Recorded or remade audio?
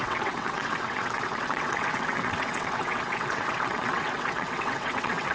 remade